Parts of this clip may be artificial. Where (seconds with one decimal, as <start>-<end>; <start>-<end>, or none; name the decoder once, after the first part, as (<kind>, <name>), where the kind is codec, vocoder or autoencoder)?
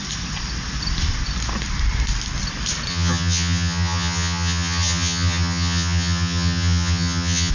2.9-7.5 (vocoder, HiFi-GAN)